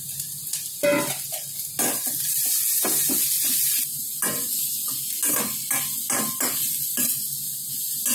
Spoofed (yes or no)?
no